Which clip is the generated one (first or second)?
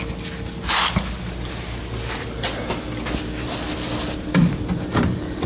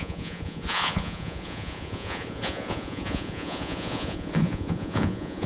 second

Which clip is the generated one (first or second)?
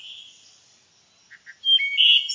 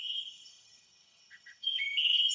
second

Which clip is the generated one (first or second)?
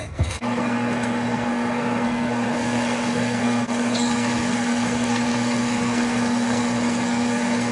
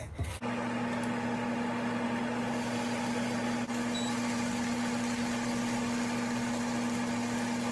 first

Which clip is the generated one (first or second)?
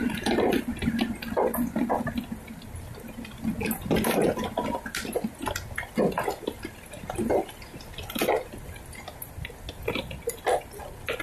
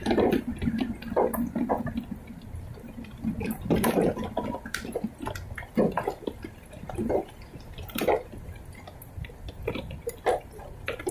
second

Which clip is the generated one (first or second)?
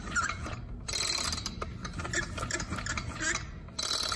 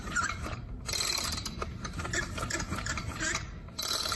second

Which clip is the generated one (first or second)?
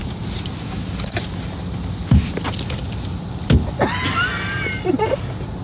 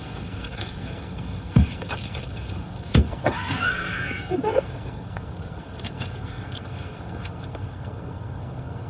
second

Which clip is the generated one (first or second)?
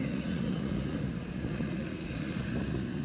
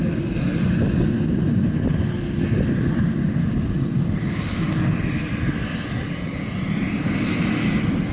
first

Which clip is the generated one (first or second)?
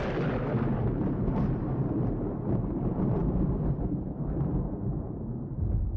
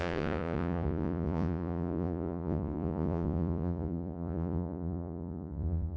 second